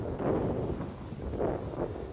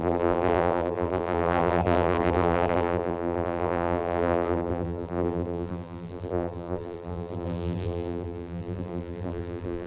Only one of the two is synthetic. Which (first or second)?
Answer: second